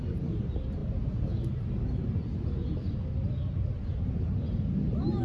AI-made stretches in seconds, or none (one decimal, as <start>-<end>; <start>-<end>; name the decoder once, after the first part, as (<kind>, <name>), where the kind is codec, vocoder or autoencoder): none